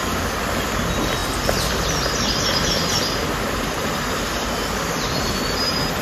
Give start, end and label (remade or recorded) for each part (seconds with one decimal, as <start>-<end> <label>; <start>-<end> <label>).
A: 0.0-6.0 recorded